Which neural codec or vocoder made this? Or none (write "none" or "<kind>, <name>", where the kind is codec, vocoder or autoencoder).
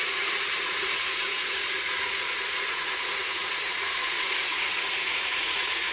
vocoder, Vocos